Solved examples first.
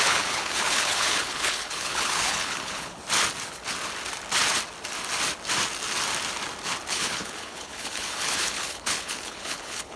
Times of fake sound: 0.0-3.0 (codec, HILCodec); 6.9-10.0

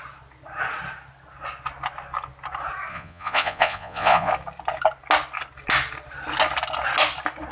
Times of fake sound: 2.9-4.3 (vocoder, Vocos)

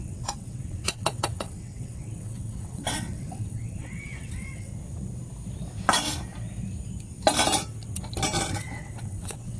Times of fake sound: 0.0-4.7 (vocoder, WaveNeXt); 8.5-9.6

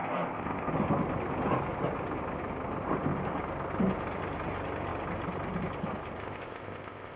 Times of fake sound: 0.0-0.7 (codec, ZipCodec); 6.2-7.2